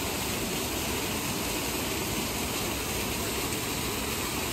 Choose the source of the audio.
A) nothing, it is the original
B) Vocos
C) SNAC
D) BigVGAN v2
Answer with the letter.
A